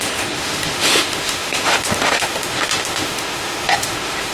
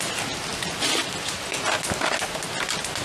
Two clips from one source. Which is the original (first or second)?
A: second